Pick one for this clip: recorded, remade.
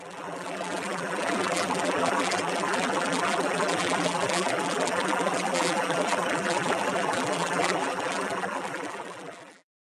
remade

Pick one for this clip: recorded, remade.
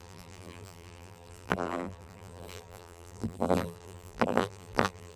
remade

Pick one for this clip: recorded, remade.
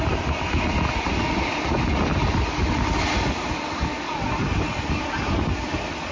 recorded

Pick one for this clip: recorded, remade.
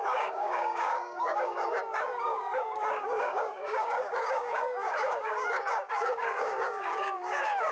remade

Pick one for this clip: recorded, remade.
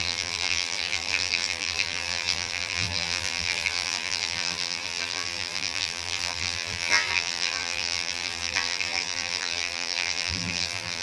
remade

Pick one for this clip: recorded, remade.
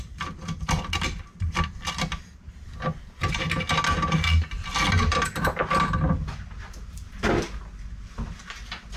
recorded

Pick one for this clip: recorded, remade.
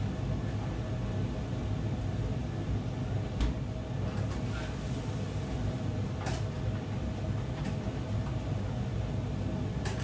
recorded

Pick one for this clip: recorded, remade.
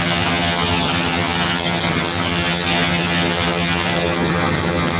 remade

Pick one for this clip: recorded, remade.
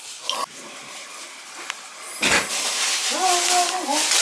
recorded